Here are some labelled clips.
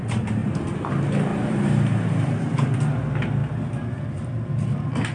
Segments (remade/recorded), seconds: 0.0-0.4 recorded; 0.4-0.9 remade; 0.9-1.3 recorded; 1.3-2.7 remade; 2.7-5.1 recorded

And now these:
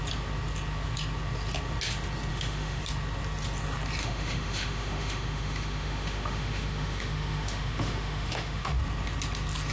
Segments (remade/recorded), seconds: 0.0-2.3 recorded; 2.3-2.8 remade; 2.8-4.0 recorded; 4.0-8.8 remade; 8.8-9.7 recorded

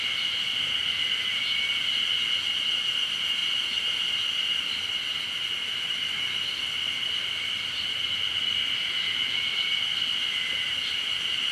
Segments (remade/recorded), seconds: 0.0-11.5 recorded